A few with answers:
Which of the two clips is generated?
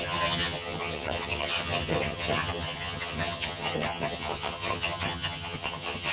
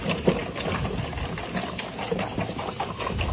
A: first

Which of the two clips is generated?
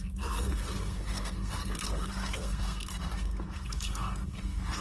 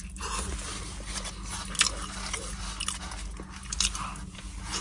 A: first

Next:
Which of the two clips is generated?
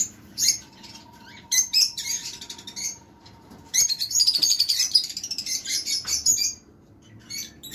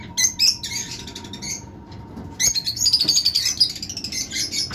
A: first